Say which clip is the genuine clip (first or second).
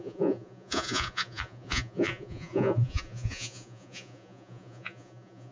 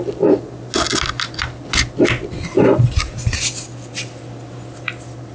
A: second